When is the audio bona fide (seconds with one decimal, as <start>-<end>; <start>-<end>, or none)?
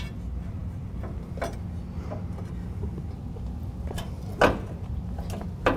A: 0.0-5.8